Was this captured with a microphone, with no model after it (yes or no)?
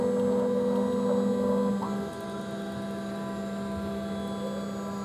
yes